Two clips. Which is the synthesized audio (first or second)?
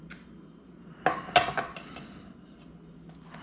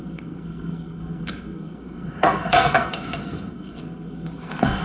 second